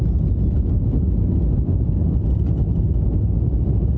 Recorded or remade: recorded